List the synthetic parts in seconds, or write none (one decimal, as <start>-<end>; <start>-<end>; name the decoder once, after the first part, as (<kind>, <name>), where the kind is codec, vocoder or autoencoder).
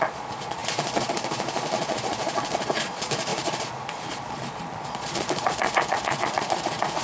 0.0-7.0 (vocoder, Vocos)